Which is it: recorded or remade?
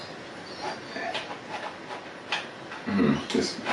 recorded